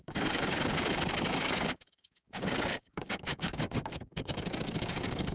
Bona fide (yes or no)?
no